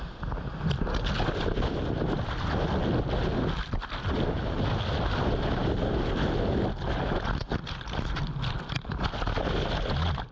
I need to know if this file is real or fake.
real